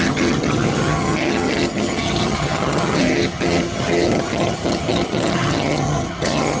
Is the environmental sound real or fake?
fake